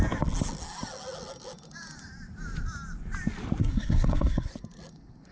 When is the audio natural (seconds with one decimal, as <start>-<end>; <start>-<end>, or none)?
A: 0.0-3.6; 4.5-5.3